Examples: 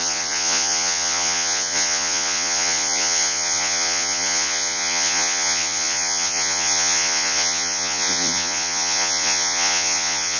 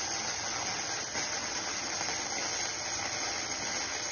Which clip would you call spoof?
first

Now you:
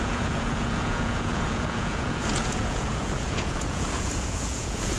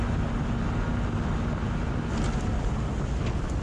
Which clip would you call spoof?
first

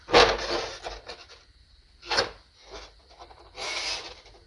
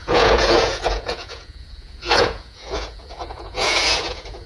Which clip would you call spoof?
second